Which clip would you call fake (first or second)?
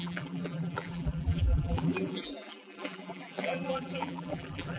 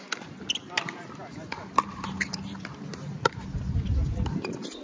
first